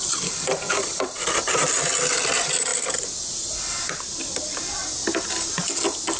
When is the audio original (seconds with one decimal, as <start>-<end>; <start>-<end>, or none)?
2.7-4.2; 4.8-6.2